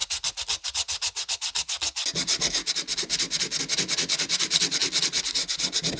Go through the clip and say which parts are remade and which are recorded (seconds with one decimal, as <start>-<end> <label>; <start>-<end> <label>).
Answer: 0.0-6.0 recorded